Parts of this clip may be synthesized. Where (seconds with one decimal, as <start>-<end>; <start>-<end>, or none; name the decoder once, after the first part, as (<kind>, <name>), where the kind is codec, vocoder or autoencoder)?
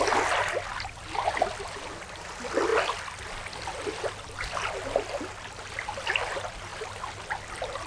none